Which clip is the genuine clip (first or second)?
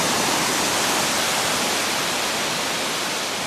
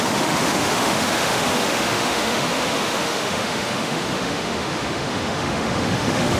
first